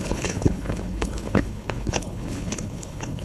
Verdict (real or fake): fake